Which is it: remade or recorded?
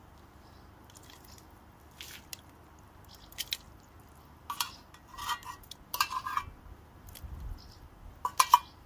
recorded